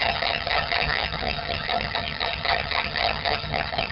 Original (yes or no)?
no